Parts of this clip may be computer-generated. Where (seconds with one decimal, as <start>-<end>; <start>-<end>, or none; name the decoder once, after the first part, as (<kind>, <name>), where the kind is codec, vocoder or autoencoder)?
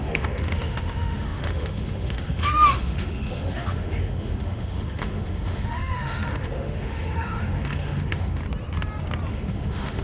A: 0.0-8.4 (autoencoder, DAC-VAE); 9.3-10.0